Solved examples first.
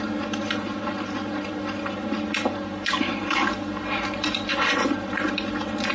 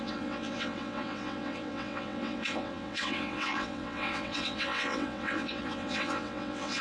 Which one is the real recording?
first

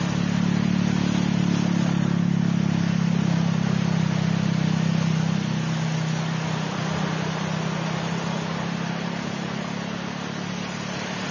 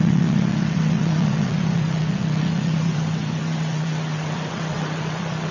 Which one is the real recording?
first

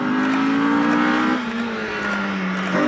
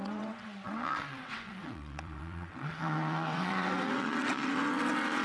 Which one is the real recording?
first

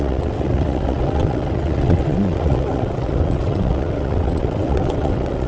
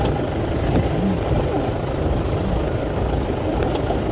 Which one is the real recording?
second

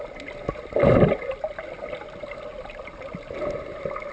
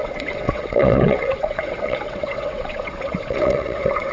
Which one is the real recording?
first